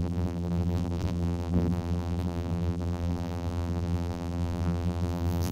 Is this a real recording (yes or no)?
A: no